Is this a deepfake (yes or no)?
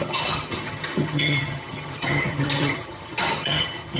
yes